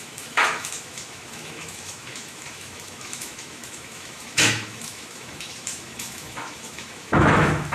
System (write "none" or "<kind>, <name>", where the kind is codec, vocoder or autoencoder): autoencoder, DAC-VAE